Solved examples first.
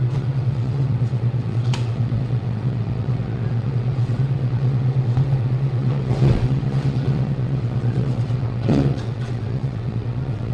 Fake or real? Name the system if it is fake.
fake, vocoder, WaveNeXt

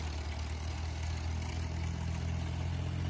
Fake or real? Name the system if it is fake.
real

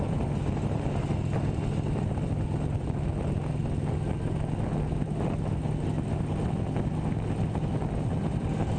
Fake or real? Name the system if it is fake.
real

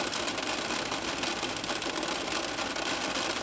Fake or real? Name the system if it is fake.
real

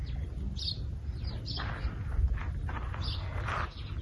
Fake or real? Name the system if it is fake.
real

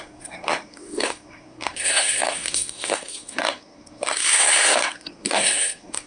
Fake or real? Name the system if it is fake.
fake, codec, SNAC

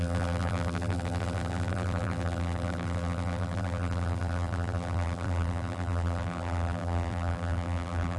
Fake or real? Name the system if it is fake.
fake, vocoder, BigVGAN v2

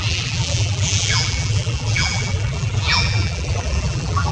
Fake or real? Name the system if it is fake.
fake, vocoder, BigVGAN v2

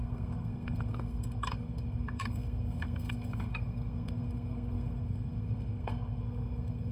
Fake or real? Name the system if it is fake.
fake, codec, SNAC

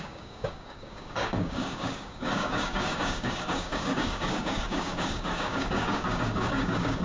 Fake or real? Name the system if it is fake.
fake, codec, DAC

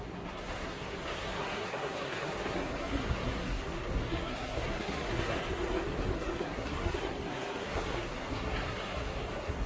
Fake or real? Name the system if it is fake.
fake, codec, SNAC